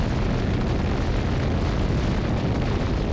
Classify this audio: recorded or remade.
recorded